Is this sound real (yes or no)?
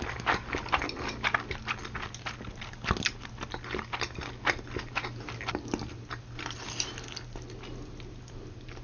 yes